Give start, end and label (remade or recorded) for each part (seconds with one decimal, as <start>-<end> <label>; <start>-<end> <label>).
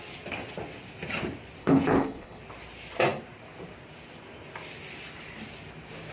0.0-1.6 recorded; 1.6-2.4 remade; 2.4-6.1 recorded